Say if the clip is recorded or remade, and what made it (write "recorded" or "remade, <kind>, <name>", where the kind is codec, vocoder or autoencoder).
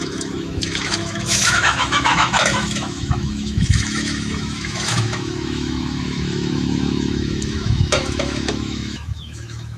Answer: remade, autoencoder, DAC-VAE